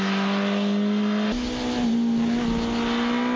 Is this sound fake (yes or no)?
no